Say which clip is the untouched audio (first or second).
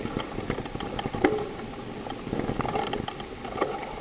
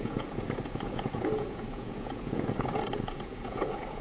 first